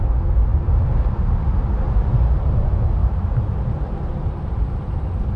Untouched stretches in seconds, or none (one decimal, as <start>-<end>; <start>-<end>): 0.0-0.5; 1.6-3.0; 5.0-5.4